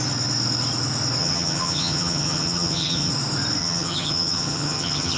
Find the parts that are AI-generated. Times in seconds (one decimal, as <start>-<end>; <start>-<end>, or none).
1.2-3.1; 3.6-5.2